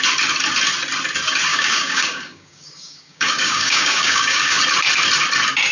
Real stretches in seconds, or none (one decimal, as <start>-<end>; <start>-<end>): 0.0-1.5; 4.6-5.7